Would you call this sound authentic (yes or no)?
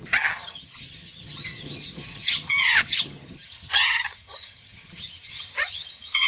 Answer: no